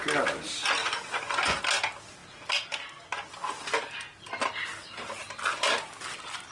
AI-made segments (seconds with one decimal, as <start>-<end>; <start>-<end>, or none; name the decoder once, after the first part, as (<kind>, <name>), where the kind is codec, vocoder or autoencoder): 0.8-1.6 (vocoder, Vocos)